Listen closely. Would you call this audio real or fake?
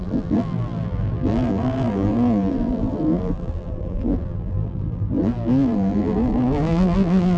fake